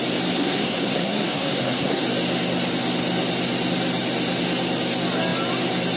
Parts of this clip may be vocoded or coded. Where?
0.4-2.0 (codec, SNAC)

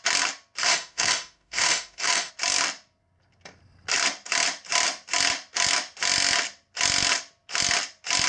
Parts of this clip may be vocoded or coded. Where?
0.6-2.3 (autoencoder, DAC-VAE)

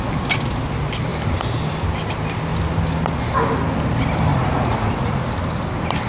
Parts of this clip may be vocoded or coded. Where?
4.3-5.2 (vocoder, Vocos)

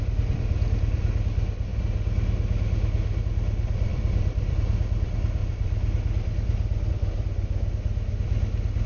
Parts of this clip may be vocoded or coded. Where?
0.0-1.7 (vocoder, BigVGAN v2); 3.2-8.9